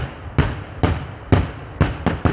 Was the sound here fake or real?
real